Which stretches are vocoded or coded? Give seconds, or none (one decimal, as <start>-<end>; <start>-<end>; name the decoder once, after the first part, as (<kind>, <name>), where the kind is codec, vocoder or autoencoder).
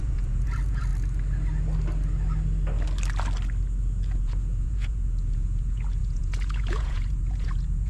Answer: 0.0-0.9 (vocoder, Vocos); 4.2-7.9